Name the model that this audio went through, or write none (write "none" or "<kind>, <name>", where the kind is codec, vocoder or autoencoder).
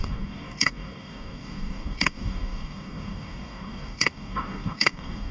codec, DAC